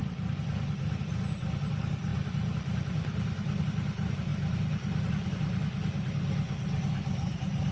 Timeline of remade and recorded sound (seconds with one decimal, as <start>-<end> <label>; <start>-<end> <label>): 0.0-7.7 recorded